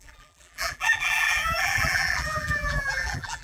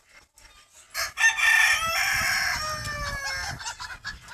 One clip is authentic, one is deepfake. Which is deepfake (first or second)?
first